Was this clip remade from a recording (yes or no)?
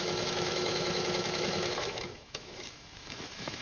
yes